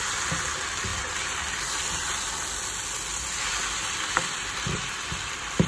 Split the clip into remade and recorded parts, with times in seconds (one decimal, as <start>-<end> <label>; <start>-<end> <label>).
0.0-0.9 recorded; 0.9-1.4 remade; 1.4-3.1 recorded; 3.1-5.7 remade